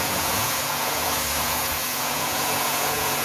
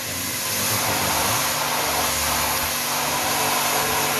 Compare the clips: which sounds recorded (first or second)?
second